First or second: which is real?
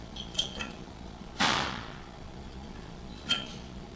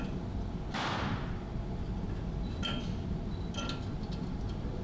second